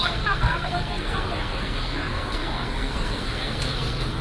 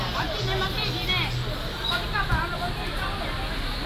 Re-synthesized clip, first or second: first